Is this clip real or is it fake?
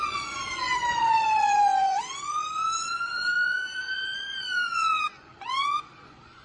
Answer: fake